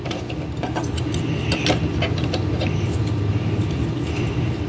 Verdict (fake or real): real